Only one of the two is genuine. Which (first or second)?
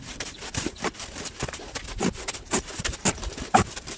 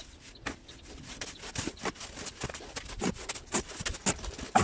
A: second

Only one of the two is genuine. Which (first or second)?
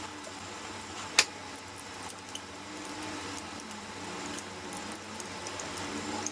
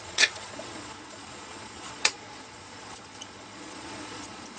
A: first